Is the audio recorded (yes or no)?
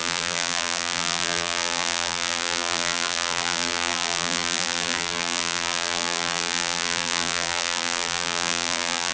no